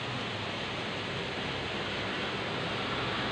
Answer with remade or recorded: recorded